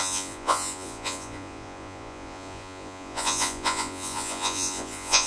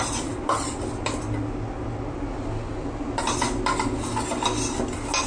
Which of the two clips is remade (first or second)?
first